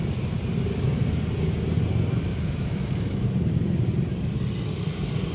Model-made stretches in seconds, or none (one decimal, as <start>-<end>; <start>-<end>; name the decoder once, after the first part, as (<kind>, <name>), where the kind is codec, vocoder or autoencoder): 2.3-3.3 (autoencoder, DAC-VAE)